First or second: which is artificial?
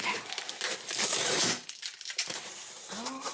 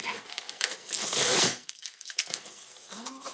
second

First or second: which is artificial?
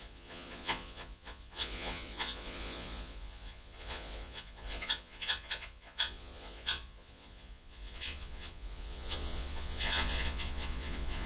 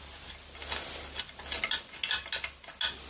first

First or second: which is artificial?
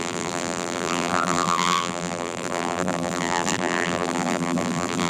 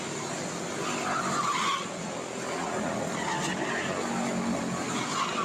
first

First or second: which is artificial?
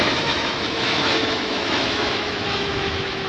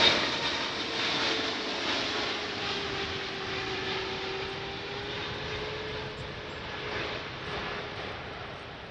first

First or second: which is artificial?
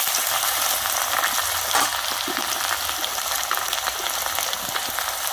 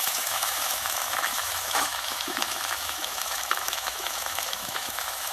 second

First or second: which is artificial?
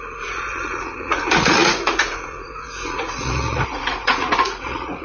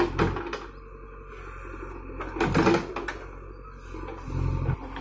first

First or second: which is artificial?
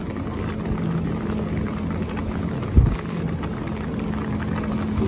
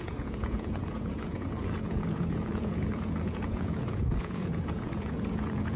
second